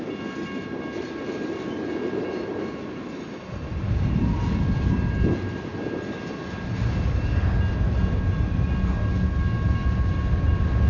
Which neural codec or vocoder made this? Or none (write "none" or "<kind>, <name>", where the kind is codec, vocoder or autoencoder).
none